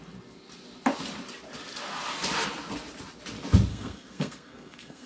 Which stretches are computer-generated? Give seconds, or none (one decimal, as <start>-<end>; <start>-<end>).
3.7-5.1